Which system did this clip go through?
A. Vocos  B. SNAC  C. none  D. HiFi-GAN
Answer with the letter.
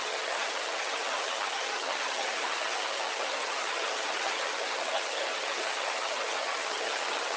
D